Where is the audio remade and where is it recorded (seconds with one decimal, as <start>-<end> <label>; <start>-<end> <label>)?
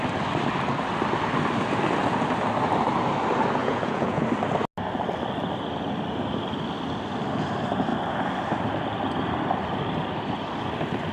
0.0-3.6 recorded; 3.6-4.2 remade; 4.2-11.1 recorded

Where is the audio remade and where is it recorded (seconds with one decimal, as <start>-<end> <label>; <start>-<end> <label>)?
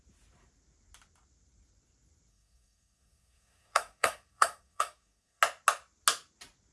0.0-2.3 recorded; 2.3-5.4 remade; 5.4-6.7 recorded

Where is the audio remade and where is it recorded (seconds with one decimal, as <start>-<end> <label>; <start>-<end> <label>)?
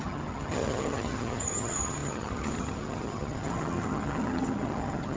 0.0-5.2 remade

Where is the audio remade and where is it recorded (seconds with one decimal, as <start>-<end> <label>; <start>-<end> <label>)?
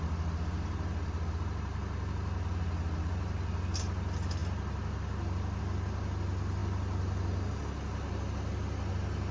0.0-9.3 recorded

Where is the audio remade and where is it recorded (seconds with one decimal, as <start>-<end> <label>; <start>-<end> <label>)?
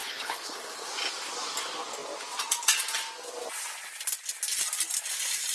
0.0-0.9 remade; 0.9-5.5 recorded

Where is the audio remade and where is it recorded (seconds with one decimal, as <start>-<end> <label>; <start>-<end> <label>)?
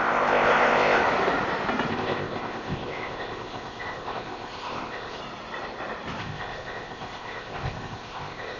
0.0-1.0 remade; 1.0-1.9 recorded; 1.9-5.2 remade; 5.2-6.2 recorded; 6.2-8.6 remade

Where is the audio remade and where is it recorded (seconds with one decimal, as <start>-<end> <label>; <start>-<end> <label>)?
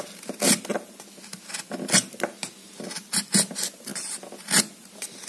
0.0-5.3 recorded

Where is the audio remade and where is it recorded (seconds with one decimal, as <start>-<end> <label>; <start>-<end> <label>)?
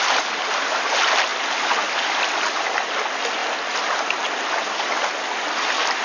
0.0-6.0 recorded